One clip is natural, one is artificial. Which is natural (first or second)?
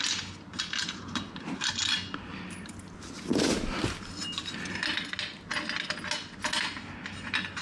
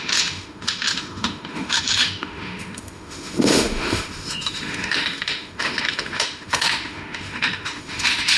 first